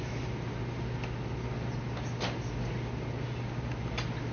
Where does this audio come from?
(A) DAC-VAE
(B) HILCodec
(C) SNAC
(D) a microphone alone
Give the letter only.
D